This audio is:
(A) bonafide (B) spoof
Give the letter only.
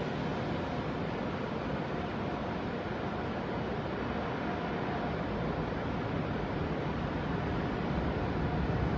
A